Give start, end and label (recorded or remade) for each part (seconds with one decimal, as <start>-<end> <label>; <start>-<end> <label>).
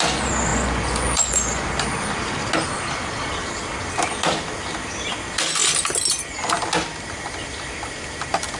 0.0-0.5 recorded; 0.5-1.7 remade; 1.7-8.6 recorded